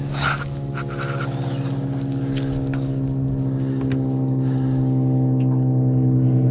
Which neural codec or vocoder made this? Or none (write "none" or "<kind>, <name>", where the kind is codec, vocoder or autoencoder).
none